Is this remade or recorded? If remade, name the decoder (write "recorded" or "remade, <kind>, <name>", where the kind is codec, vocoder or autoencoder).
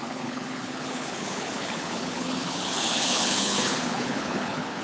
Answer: remade, codec, HILCodec